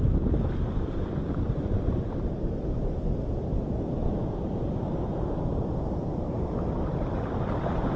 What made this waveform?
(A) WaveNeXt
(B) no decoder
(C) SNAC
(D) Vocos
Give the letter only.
B